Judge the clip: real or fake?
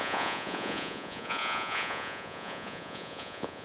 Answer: fake